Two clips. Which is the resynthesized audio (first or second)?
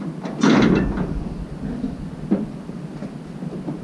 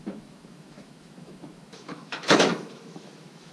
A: second